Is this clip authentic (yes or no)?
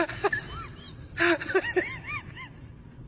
yes